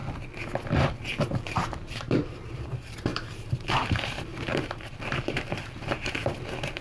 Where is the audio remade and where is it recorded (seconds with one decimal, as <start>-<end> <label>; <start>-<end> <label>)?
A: 0.0-1.2 recorded; 1.2-6.8 remade